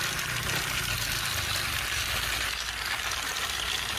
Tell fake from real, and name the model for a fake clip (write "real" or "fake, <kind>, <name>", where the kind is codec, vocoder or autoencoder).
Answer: real